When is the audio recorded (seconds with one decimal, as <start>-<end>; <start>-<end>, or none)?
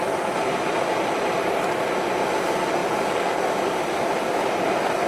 0.0-5.1